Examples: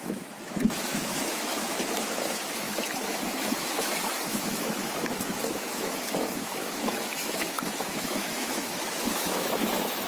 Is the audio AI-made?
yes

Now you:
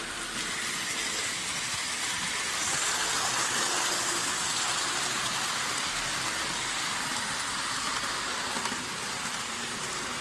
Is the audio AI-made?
no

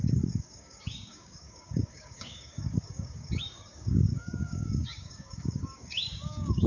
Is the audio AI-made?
yes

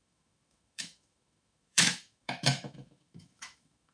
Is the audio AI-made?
yes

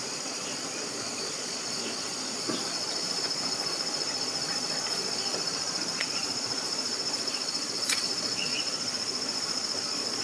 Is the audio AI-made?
yes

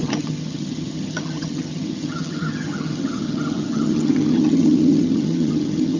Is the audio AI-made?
yes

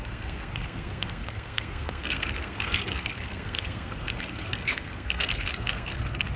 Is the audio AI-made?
yes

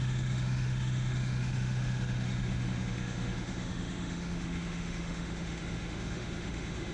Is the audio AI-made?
yes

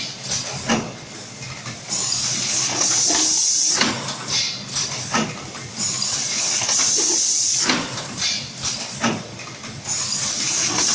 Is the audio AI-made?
no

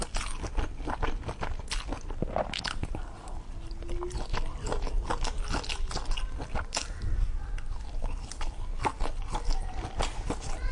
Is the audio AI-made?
no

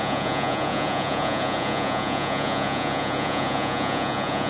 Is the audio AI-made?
yes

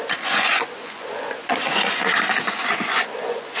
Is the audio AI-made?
yes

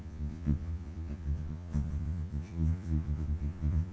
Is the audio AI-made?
yes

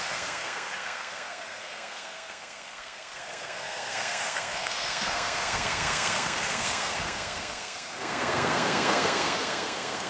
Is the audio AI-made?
yes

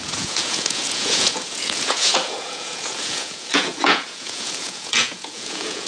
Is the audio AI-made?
yes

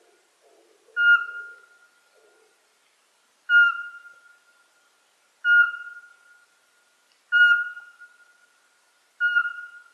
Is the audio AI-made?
no